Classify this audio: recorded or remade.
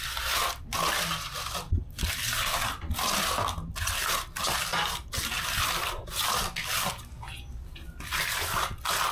recorded